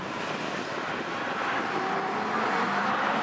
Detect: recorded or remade recorded